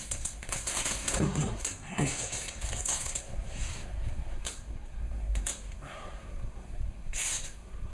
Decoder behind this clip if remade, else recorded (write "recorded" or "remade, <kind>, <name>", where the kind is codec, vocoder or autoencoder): remade, codec, SNAC